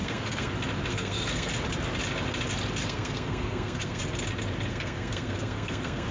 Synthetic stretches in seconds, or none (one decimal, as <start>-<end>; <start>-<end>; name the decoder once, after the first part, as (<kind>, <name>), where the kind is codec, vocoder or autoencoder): 0.0-0.5 (codec, SNAC); 0.9-1.5; 2.8-4.0; 4.7-6.1